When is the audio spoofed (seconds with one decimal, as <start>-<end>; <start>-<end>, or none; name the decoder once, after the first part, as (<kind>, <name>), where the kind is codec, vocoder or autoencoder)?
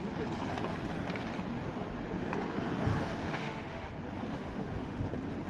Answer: 3.2-3.9 (autoencoder, DAC-VAE); 4.3-5.0